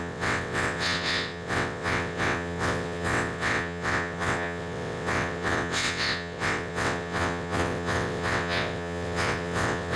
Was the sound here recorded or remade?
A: remade